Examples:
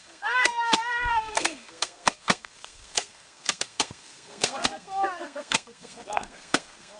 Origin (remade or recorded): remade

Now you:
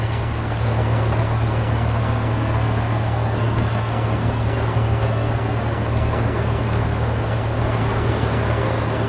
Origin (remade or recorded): remade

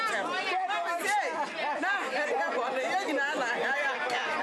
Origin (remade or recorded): recorded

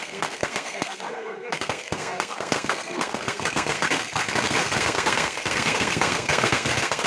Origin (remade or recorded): remade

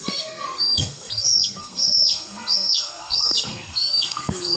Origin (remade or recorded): remade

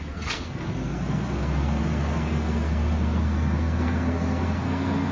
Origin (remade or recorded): remade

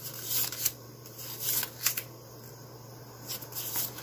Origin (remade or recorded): recorded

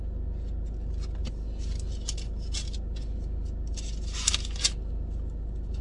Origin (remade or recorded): recorded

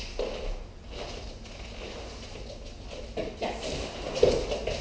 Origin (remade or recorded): recorded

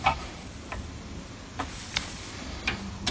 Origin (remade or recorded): recorded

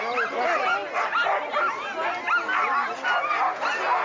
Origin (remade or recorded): recorded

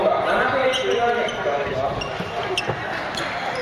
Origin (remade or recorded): recorded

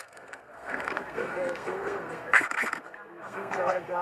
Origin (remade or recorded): remade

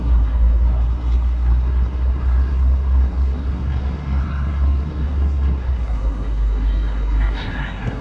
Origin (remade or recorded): remade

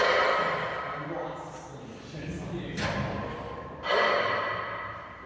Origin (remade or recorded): recorded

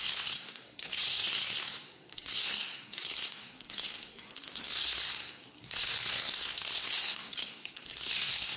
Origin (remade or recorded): remade